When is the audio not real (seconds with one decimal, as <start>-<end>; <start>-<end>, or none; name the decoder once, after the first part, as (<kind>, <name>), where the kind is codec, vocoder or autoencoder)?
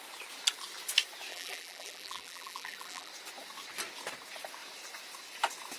1.3-3.1 (vocoder, BigVGAN v2)